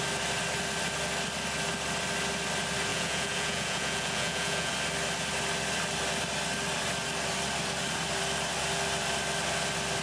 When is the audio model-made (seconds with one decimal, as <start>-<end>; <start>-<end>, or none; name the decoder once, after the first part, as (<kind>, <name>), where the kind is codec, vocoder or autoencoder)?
2.9-4.7 (vocoder, Vocos)